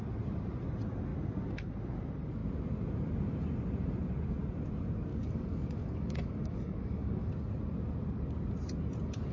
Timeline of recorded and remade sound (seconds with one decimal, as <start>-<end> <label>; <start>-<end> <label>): 0.0-5.1 recorded; 5.1-7.3 remade; 7.3-9.3 recorded